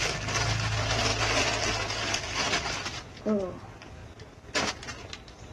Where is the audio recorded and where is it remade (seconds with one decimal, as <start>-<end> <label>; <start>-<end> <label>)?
0.0-5.5 recorded